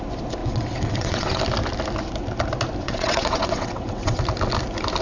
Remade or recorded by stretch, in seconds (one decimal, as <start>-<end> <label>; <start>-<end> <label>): 0.0-0.4 recorded; 0.4-1.4 remade; 1.4-2.8 recorded; 2.8-4.2 remade; 4.2-5.0 recorded